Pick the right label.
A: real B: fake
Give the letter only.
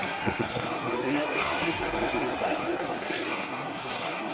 B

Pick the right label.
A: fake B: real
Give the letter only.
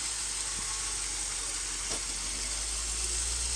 B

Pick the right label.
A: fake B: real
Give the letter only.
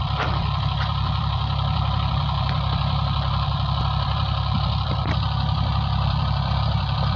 A